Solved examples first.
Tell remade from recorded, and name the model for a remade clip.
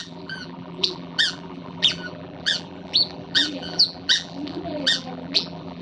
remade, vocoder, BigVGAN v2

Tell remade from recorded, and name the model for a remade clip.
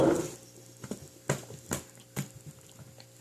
recorded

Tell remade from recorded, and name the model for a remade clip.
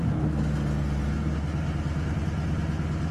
recorded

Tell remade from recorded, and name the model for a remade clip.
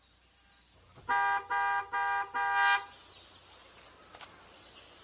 recorded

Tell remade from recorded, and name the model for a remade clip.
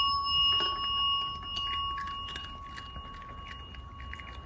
recorded